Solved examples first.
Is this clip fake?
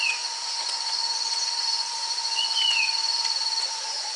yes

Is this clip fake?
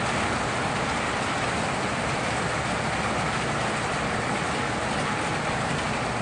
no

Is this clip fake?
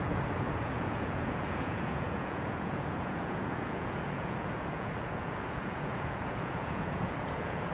yes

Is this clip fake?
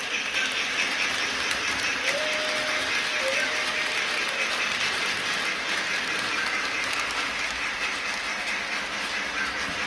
no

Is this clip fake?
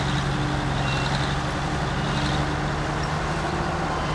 no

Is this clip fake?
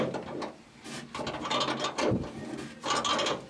no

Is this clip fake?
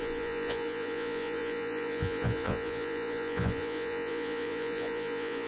yes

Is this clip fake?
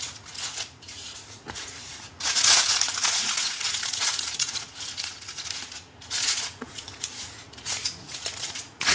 yes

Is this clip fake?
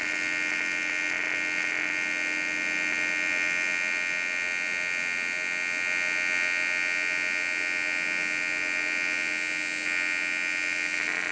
no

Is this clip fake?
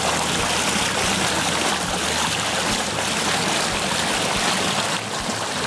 no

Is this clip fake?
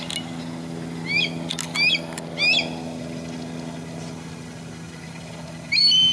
no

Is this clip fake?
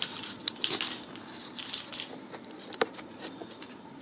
no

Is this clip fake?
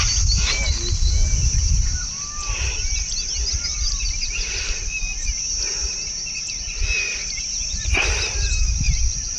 no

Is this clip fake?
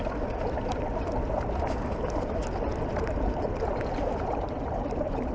no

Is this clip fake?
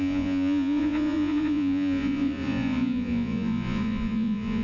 yes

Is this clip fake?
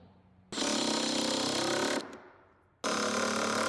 no